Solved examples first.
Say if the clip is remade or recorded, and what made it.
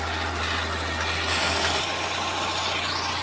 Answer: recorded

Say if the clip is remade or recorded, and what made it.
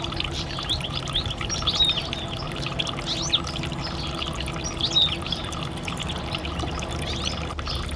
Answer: recorded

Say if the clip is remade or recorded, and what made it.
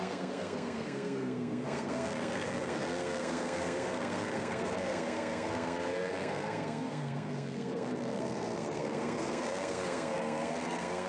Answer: remade, codec, SNAC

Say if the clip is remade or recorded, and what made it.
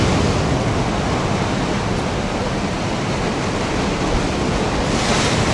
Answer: recorded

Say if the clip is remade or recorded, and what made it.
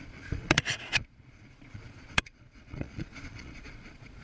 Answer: remade, vocoder, Vocos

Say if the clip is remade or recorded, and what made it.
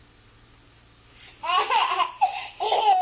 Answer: recorded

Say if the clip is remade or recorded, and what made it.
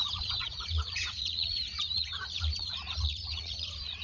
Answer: remade, vocoder, Vocos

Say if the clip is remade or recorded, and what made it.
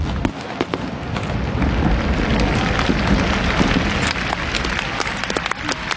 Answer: recorded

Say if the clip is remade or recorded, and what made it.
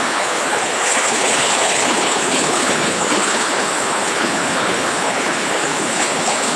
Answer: remade, codec, HILCodec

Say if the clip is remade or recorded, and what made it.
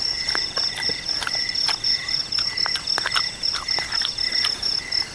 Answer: recorded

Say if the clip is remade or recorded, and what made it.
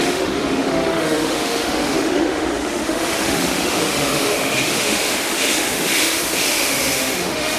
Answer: remade, autoencoder, DAC-VAE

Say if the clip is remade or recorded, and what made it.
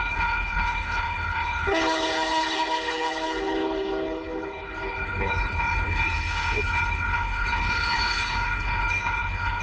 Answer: remade, codec, HILCodec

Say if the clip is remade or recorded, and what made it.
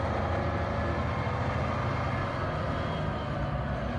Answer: recorded